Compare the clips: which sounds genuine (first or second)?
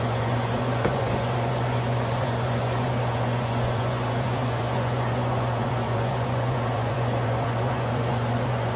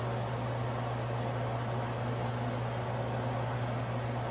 second